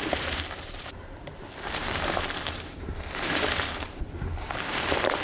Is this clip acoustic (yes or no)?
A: no